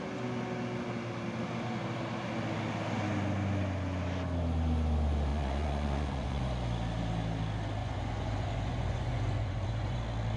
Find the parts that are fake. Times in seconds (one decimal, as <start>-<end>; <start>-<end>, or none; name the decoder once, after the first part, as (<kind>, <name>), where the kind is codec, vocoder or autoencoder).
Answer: 5.3-6.4 (vocoder, Vocos); 7.8-10.0